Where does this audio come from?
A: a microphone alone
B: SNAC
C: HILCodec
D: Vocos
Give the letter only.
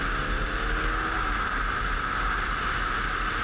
A